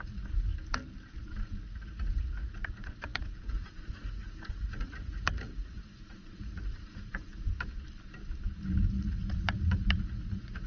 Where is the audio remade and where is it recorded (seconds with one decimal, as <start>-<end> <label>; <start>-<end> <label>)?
0.0-0.5 remade; 0.5-1.2 recorded; 1.2-7.3 remade; 7.3-8.9 recorded; 8.9-10.7 remade